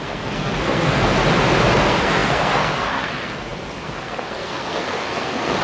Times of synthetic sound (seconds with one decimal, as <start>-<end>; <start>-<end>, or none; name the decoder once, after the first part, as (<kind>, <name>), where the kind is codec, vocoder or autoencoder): 0.0-1.2 (codec, SNAC); 1.7-5.6